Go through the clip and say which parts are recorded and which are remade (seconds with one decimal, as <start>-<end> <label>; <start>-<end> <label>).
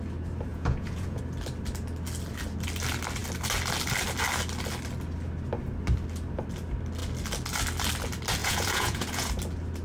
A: 0.0-0.5 recorded; 0.5-1.2 remade; 1.2-8.4 recorded; 8.4-9.3 remade; 9.3-9.8 recorded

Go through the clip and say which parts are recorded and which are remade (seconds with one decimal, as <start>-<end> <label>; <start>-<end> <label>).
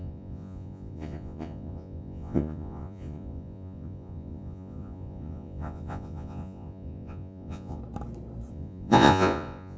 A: 0.0-7.8 remade; 7.8-8.5 recorded; 8.5-9.8 remade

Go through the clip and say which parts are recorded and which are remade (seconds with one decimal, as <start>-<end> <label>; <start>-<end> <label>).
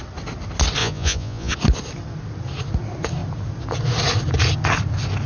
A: 0.0-0.8 recorded; 0.8-1.5 remade; 1.5-5.3 recorded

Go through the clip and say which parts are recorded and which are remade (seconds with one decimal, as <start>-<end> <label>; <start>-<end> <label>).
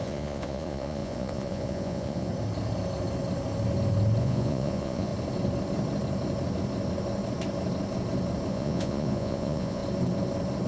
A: 0.0-2.3 remade; 2.3-4.2 recorded; 4.2-5.1 remade; 5.1-8.5 recorded; 8.5-9.8 remade; 9.8-10.7 recorded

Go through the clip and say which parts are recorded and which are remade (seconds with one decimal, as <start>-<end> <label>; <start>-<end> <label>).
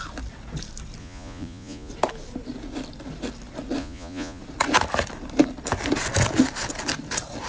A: 0.0-1.0 recorded; 1.0-1.9 remade; 1.9-3.8 recorded; 3.8-4.4 remade; 4.4-7.5 recorded